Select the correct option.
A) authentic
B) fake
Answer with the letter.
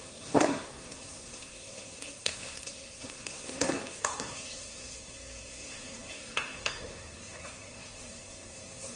B